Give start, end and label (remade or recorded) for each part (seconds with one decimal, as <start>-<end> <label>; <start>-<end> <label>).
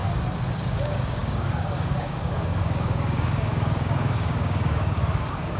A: 0.0-0.7 recorded; 0.7-5.6 remade